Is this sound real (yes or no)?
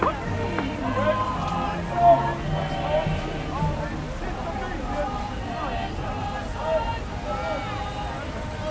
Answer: yes